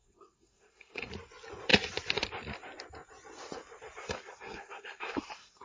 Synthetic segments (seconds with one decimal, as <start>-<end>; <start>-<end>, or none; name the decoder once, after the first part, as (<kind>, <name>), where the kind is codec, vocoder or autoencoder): 0.0-1.1 (codec, SNAC); 4.0-5.6